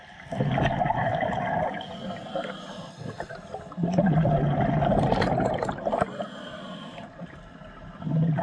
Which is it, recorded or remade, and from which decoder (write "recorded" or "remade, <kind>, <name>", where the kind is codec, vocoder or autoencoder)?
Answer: recorded